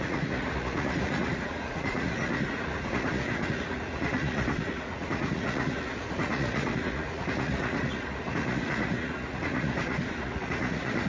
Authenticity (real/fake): fake